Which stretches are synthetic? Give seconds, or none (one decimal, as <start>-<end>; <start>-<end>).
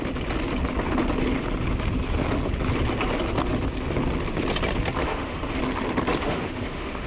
5.0-5.6; 6.2-7.1